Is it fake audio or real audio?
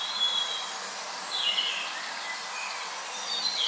real